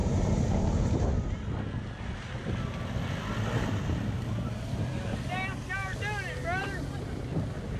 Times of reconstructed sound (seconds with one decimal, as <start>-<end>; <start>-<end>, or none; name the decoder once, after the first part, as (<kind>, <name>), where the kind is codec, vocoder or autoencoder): 0.0-1.1 (vocoder, BigVGAN v2)